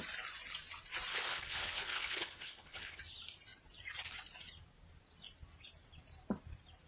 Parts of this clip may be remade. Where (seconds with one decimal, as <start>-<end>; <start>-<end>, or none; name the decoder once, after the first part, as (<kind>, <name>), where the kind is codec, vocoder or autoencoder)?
1.1-3.0 (codec, HILCodec)